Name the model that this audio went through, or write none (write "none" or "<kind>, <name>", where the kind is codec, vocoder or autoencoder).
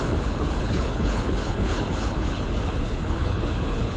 codec, HILCodec